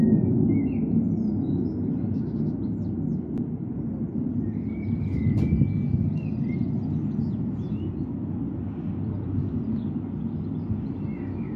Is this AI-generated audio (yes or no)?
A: no